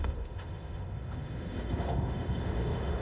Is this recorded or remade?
remade